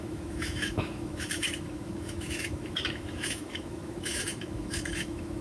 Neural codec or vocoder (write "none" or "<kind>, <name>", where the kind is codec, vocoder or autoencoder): autoencoder, DAC-VAE